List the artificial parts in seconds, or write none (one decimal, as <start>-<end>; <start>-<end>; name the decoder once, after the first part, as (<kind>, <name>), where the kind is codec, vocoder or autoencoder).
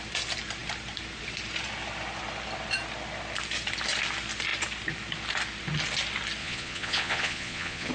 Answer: 6.4-7.9 (vocoder, Vocos)